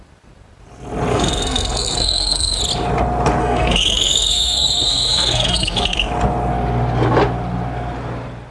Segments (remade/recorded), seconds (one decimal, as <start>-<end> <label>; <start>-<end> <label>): 0.0-1.1 recorded; 1.1-2.6 remade; 2.6-3.4 recorded; 3.4-6.1 remade; 6.1-8.5 recorded